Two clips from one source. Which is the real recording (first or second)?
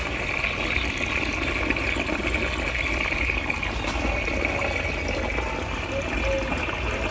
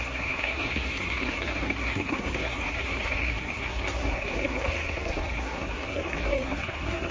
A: first